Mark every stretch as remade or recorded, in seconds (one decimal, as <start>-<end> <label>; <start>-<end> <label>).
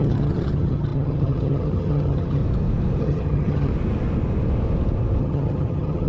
0.0-2.4 remade; 2.4-3.0 recorded; 3.0-3.7 remade; 3.7-5.2 recorded; 5.2-6.1 remade